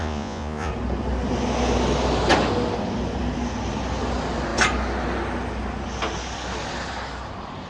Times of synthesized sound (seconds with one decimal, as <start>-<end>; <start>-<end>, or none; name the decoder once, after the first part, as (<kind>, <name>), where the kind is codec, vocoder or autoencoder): 0.0-0.7 (vocoder, Vocos)